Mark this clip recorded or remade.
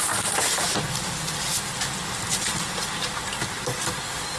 recorded